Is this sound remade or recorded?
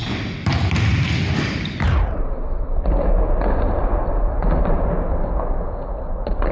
recorded